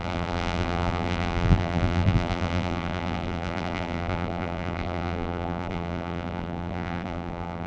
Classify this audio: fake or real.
fake